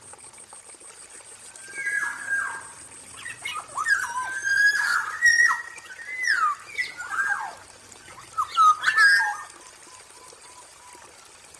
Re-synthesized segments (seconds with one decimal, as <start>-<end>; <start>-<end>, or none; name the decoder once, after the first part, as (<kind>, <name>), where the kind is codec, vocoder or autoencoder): 4.9-5.9 (vocoder, Vocos)